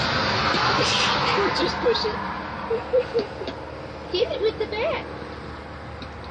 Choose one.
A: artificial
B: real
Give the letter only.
B